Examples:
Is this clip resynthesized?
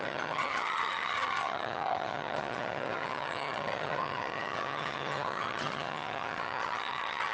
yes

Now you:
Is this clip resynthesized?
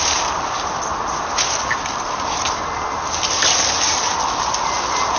no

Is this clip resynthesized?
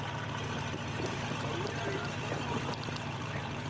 yes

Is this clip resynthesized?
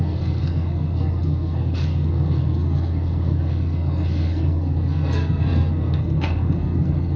yes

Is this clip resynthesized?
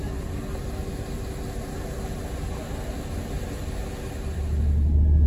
no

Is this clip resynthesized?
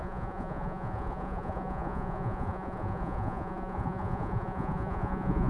yes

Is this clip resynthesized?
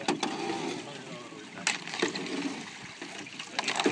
no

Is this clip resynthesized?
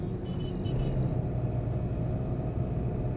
no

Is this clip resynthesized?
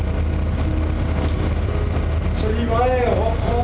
no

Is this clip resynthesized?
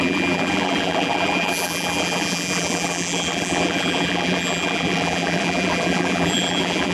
yes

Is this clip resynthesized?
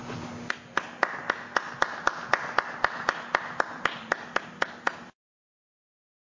no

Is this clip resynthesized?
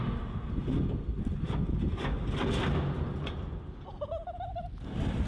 no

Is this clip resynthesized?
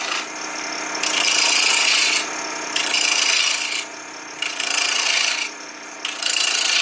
no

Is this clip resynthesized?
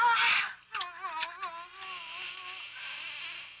no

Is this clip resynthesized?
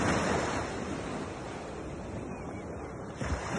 no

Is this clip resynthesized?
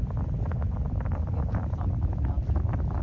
no